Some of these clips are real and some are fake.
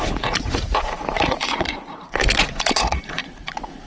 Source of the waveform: fake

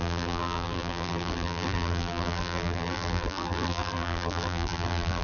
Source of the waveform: fake